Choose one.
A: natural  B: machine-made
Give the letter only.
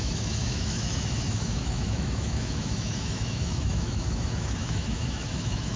B